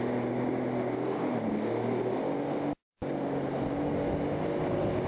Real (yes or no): yes